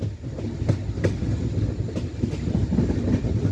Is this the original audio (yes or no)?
yes